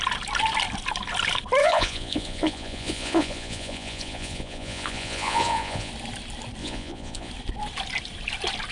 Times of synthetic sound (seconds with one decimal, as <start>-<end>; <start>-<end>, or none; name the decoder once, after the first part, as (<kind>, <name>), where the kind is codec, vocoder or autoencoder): 1.6-5.9 (vocoder, Vocos); 6.6-7.3